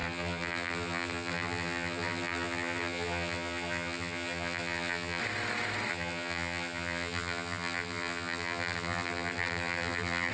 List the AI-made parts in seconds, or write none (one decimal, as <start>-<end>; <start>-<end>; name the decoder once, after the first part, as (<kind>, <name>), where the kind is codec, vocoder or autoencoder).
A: 0.0-5.2 (vocoder, BigVGAN v2); 5.9-10.3